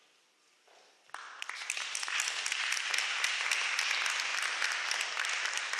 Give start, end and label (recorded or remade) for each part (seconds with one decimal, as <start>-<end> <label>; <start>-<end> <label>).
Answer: 0.0-5.8 recorded